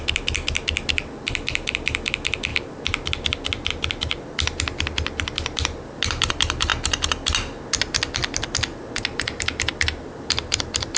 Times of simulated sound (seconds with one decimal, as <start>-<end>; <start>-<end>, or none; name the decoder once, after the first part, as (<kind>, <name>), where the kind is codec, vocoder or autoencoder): none